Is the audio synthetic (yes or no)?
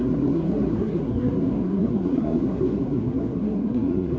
yes